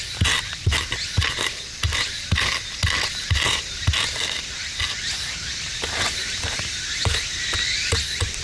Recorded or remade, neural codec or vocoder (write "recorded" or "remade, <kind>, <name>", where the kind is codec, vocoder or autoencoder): recorded